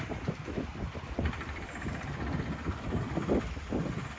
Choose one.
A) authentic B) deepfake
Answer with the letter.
A